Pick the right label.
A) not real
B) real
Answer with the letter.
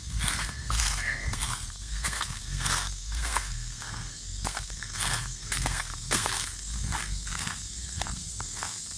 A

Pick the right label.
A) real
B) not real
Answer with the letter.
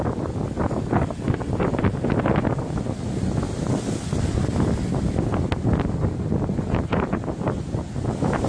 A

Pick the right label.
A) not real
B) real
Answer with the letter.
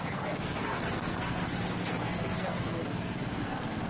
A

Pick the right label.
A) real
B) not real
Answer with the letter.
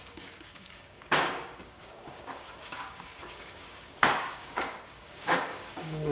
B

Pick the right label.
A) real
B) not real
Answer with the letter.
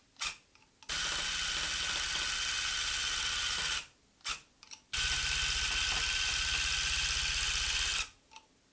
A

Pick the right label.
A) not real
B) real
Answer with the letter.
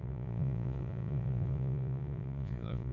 A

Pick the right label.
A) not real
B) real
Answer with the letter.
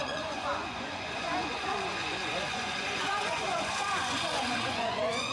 A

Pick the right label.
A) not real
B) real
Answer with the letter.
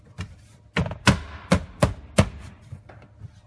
B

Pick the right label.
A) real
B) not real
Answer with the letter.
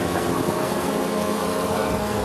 B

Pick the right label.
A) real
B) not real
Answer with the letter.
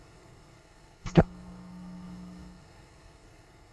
B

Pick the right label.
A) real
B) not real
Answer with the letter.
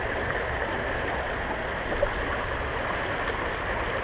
A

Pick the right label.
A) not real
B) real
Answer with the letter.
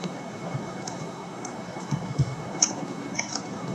A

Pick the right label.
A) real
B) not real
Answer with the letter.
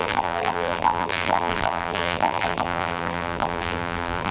B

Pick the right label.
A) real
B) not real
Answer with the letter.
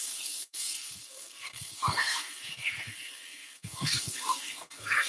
B